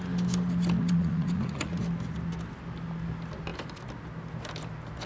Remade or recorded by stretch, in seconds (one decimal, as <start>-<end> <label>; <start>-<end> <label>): 0.0-0.8 recorded; 0.8-1.8 remade; 1.8-5.1 recorded